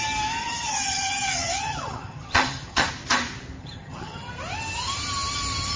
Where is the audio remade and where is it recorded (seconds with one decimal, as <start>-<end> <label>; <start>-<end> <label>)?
0.0-0.4 recorded; 0.4-2.9 remade; 2.9-3.6 recorded; 3.6-4.3 remade; 4.3-5.8 recorded